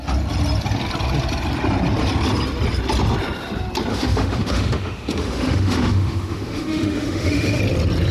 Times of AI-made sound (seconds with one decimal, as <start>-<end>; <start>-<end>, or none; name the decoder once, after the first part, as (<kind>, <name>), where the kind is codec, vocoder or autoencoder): 3.9-7.6 (autoencoder, DAC-VAE)